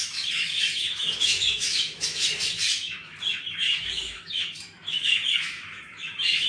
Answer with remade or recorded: remade